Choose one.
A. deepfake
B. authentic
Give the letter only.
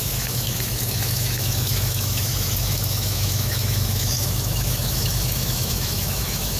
A